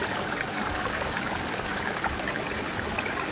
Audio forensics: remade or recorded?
remade